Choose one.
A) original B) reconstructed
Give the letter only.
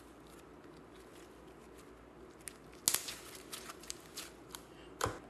A